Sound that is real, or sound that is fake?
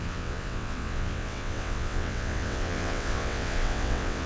fake